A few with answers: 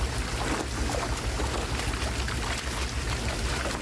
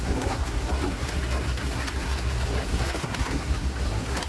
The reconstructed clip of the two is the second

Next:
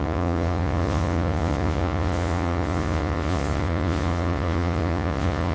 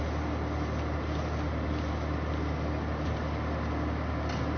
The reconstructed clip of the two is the first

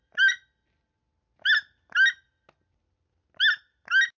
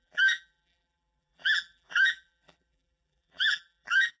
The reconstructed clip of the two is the second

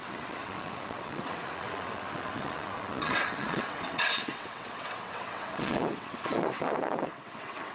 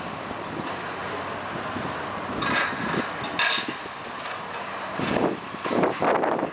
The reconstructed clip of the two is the first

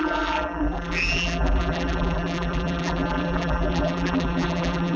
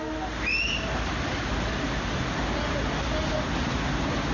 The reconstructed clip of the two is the first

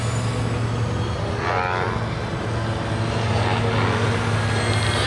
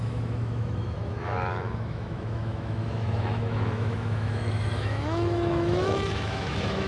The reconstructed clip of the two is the second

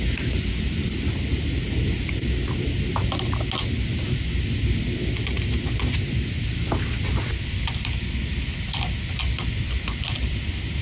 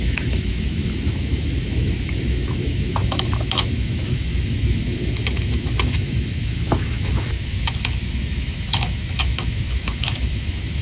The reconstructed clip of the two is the second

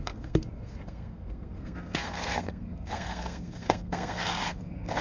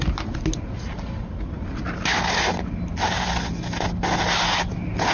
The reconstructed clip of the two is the first